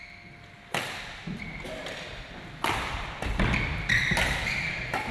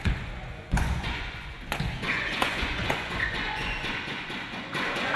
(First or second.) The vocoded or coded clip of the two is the second